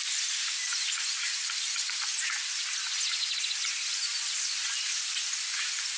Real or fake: real